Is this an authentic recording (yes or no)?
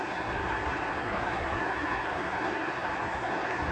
no